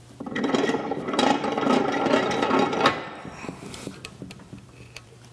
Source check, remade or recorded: remade